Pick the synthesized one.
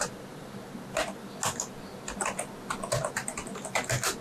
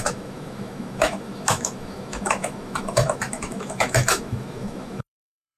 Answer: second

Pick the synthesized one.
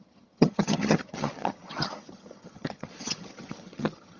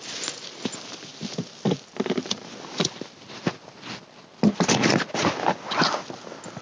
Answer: first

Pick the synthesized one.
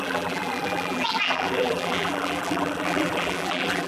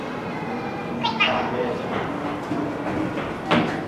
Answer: first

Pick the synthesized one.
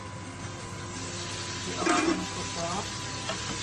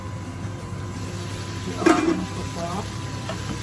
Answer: second